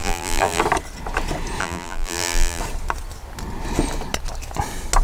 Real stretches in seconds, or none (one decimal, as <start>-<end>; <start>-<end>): 0.6-1.6; 2.6-5.0

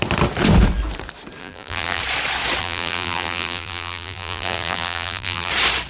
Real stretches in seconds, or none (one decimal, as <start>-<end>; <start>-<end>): 0.0-1.4; 2.0-2.6; 5.5-5.9